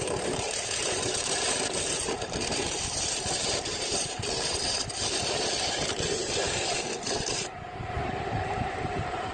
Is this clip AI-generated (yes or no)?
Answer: yes